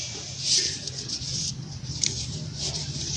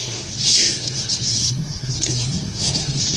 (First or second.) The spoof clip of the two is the second